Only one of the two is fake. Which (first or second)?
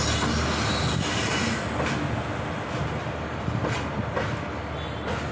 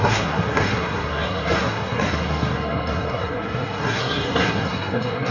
second